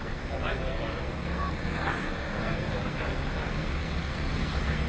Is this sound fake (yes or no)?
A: yes